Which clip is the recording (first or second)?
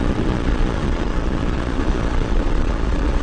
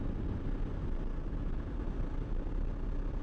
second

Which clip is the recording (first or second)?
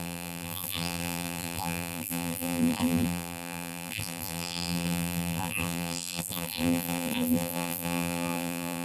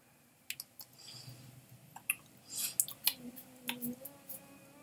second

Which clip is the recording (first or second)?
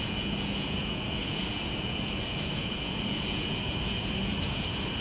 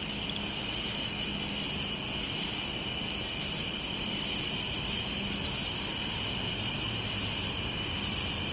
second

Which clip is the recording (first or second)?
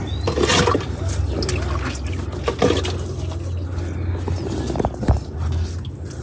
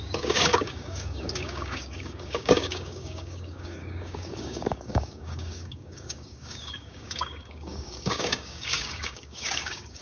first